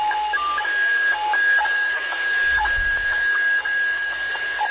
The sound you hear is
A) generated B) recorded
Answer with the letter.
A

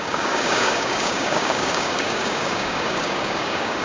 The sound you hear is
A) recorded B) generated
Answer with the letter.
B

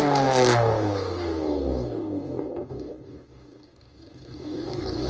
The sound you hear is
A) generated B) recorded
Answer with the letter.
A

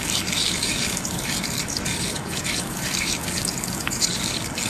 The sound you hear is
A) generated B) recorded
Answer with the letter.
A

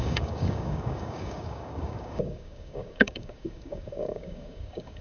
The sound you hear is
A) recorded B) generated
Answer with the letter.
B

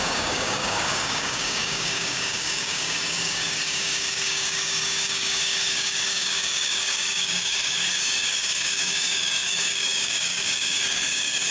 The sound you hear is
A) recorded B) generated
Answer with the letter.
B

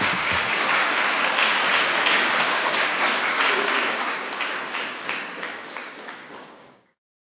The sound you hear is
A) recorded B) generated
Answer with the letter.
B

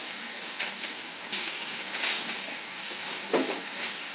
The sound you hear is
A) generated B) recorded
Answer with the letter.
A